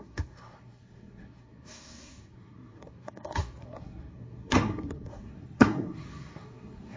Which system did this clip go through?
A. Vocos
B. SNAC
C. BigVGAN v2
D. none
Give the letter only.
B